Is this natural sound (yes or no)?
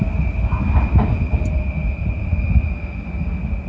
yes